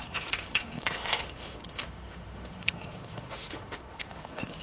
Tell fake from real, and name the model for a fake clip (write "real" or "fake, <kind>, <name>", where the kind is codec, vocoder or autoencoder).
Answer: fake, autoencoder, DAC-VAE